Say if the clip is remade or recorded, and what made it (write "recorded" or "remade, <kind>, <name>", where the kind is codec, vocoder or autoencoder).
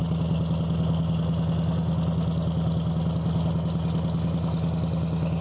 recorded